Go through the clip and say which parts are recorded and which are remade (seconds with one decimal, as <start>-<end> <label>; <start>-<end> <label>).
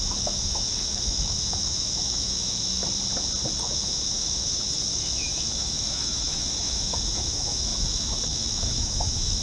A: 0.0-2.8 remade; 2.8-3.6 recorded; 3.6-9.4 remade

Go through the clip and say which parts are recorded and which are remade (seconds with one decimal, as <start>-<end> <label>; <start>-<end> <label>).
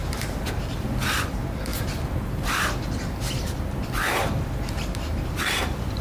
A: 0.0-6.0 recorded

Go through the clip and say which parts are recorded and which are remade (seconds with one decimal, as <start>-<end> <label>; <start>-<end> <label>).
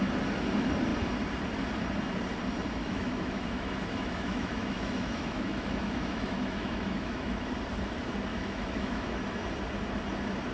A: 0.0-2.8 recorded; 2.8-7.5 remade; 7.5-8.3 recorded; 8.3-9.2 remade; 9.2-10.5 recorded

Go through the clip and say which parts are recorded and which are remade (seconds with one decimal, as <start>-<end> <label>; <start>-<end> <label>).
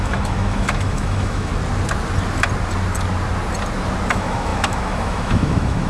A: 0.0-1.5 remade; 1.5-4.1 recorded; 4.1-5.9 remade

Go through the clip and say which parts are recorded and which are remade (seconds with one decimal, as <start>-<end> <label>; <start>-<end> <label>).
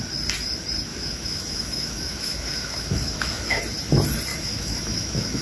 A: 0.0-0.9 recorded; 0.9-3.6 remade; 3.6-4.3 recorded; 4.3-5.4 remade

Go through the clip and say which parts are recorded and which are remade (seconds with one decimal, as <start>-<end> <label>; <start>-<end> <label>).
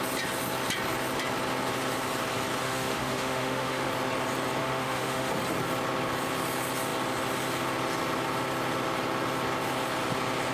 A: 0.0-2.6 recorded; 2.6-3.9 remade; 3.9-4.6 recorded; 4.6-5.3 remade; 5.3-10.5 recorded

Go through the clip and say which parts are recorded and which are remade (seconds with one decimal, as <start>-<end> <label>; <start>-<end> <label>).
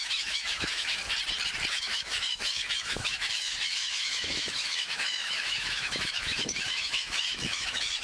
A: 0.0-1.0 remade; 1.0-1.7 recorded; 1.7-8.0 remade